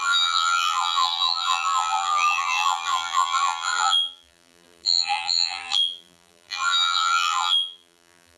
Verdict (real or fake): fake